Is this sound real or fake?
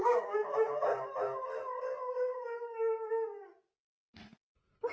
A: real